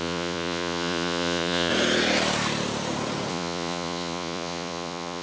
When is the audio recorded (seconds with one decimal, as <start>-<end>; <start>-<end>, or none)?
1.7-3.3

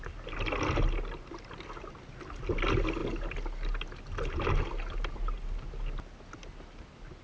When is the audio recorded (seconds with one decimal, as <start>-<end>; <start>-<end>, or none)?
0.0-7.2

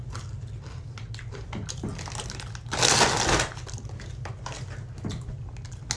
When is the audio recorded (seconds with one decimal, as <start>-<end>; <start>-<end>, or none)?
0.0-6.0